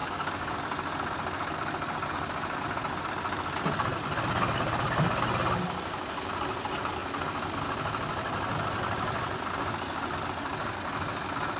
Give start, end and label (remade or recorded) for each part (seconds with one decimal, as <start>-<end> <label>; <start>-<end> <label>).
0.0-0.6 remade; 0.6-11.6 recorded